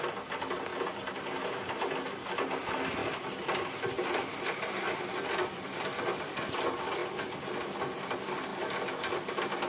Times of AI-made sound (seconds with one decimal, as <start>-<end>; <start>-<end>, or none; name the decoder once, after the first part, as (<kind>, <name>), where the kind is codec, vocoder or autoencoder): none